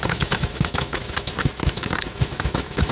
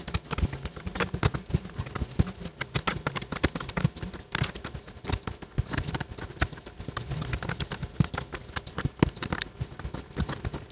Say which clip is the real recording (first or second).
second